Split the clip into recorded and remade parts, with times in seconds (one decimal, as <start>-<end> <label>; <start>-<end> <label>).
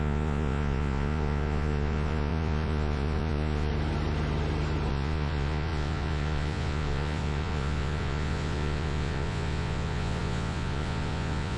0.0-3.7 remade; 3.7-4.9 recorded; 4.9-11.6 remade